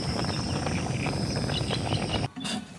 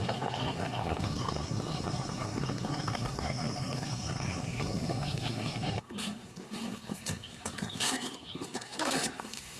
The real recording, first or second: first